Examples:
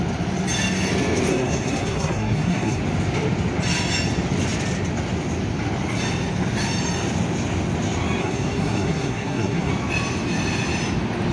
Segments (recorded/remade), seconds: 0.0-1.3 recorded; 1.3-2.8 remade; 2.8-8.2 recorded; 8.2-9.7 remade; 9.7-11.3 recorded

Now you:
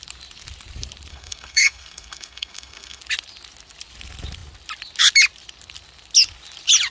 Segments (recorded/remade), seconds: 0.0-1.1 recorded; 1.1-3.0 remade; 3.0-6.9 recorded

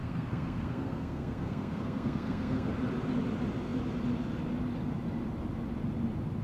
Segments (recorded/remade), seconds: 0.0-2.7 remade; 2.7-6.4 recorded

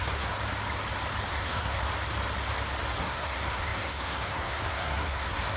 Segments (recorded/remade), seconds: 0.0-0.4 remade; 0.4-1.3 recorded; 1.3-1.9 remade; 1.9-3.0 recorded; 3.0-5.6 remade

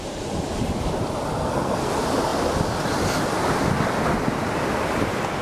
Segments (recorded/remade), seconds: 0.0-1.4 recorded; 1.4-1.9 remade; 1.9-5.4 recorded

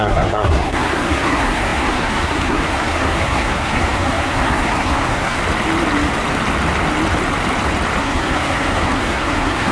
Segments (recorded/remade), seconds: 0.0-5.4 remade; 5.4-8.0 recorded; 8.0-9.7 remade